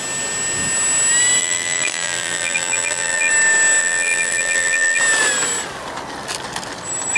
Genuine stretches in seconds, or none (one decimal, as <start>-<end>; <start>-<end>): 0.0-1.4; 3.3-3.8; 5.0-7.2